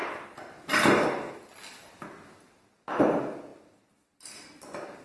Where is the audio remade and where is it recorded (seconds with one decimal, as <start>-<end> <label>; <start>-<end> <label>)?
0.0-5.0 recorded